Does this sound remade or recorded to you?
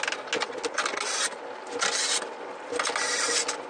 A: recorded